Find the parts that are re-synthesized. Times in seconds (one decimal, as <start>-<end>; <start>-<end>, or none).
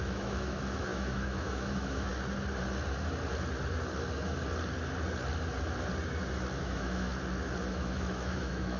0.0-2.1; 6.6-7.1; 7.7-8.8